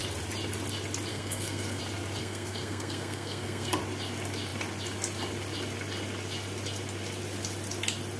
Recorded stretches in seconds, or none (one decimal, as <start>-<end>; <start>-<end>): 0.0-1.1; 1.8-2.2; 3.8-8.2